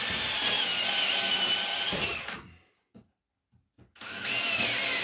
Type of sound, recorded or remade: recorded